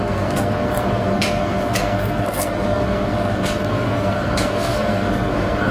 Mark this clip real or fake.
fake